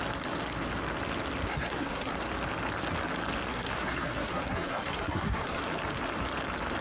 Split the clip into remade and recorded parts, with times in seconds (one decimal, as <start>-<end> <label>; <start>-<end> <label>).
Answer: 0.0-1.5 recorded; 1.5-2.1 remade; 2.1-3.5 recorded; 3.5-5.6 remade; 5.6-6.8 recorded